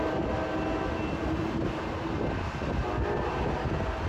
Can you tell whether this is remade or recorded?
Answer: recorded